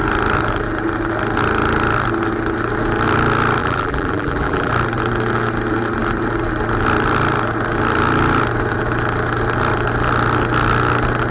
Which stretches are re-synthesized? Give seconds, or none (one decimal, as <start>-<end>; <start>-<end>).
3.6-4.7

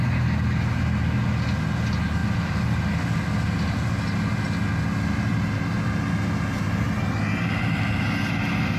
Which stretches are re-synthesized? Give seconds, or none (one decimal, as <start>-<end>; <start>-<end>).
none

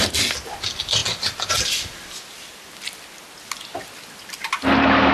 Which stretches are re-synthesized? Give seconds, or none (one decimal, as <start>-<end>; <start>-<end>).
none

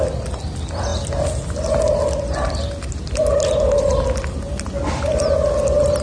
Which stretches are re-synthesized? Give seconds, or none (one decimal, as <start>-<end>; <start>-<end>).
none

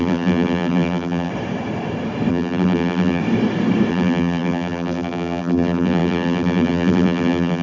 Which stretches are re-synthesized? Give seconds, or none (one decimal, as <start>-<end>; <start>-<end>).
0.0-1.3; 2.3-3.2; 3.9-7.6